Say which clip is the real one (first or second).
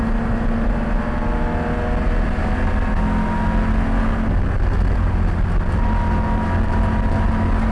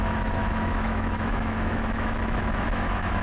first